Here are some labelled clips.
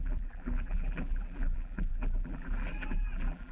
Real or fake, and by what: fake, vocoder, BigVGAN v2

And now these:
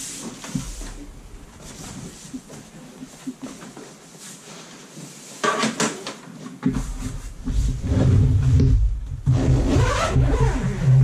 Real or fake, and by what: real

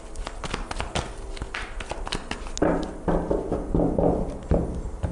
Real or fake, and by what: real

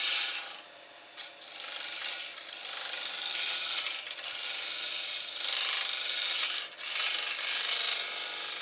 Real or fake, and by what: fake, vocoder, BigVGAN v2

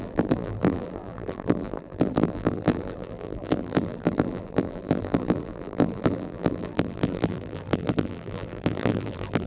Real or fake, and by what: fake, vocoder, BigVGAN v2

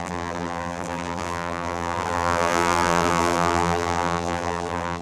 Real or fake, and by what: fake, vocoder, BigVGAN v2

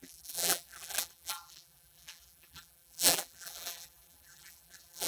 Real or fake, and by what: fake, vocoder, BigVGAN v2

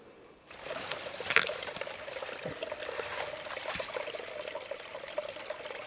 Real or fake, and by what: real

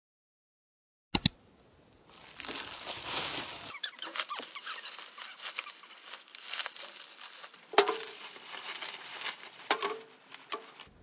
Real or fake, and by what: real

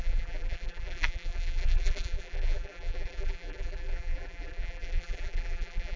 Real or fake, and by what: fake, vocoder, BigVGAN v2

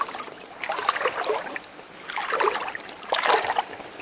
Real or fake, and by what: real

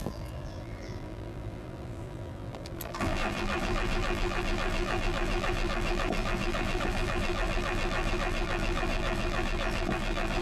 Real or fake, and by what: fake, vocoder, BigVGAN v2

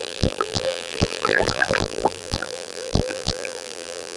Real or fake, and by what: fake, vocoder, BigVGAN v2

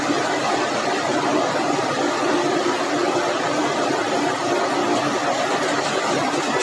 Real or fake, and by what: real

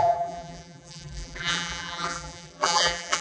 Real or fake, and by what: fake, vocoder, BigVGAN v2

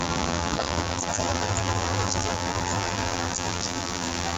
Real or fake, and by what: fake, vocoder, BigVGAN v2